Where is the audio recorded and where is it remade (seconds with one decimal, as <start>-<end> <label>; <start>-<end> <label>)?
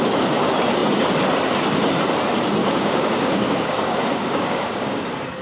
0.0-2.6 recorded; 2.6-5.0 remade; 5.0-5.4 recorded